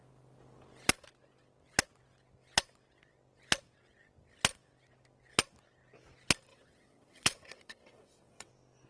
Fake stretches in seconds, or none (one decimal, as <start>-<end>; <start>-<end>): 6.5-8.5